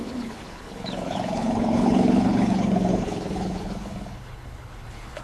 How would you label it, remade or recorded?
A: remade